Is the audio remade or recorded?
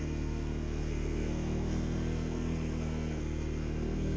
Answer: remade